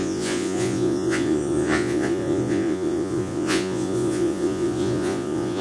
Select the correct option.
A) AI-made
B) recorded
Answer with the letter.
A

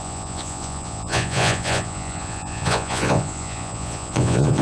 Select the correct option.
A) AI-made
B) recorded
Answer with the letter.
A